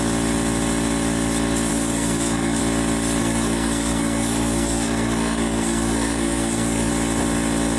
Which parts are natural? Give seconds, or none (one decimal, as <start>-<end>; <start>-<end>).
0.0-1.7; 2.6-3.2; 6.9-7.8